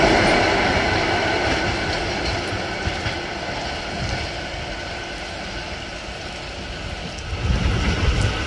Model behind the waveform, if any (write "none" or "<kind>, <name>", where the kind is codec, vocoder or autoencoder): none